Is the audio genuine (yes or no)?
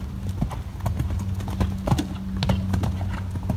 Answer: yes